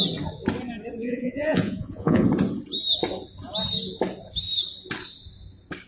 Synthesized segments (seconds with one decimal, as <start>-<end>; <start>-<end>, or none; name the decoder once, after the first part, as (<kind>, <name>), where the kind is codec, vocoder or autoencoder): 1.0-2.2 (vocoder, Vocos)